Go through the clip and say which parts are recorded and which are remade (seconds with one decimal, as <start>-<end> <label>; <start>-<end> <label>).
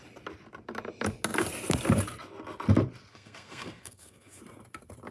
0.0-3.1 recorded; 3.1-4.4 remade; 4.4-5.1 recorded